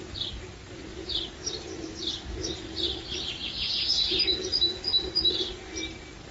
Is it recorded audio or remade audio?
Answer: recorded